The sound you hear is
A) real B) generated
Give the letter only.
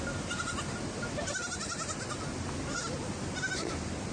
A